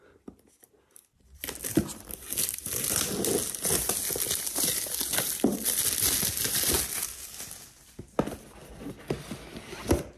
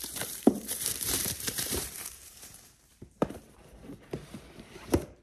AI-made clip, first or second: second